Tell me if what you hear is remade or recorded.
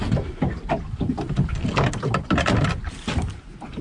recorded